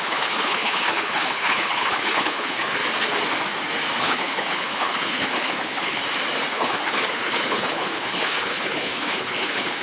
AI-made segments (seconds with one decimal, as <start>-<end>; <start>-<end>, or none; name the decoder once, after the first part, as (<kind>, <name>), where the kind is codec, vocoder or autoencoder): 0.0-2.8 (codec, HILCodec); 4.0-6.0; 6.5-9.8